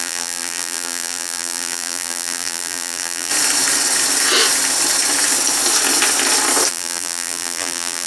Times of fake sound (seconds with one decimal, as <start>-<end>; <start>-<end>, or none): 0.0-3.3; 6.7-8.1

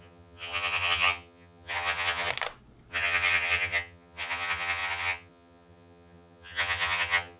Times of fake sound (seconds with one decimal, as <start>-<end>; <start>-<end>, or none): 0.0-2.3; 2.9-7.4